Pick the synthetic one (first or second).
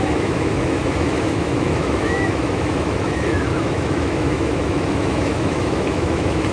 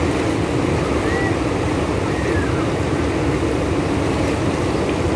first